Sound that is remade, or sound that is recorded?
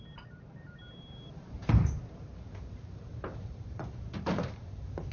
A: remade